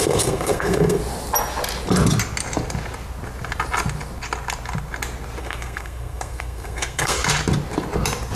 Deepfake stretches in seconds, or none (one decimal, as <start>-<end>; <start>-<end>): 0.0-1.0; 5.4-7.2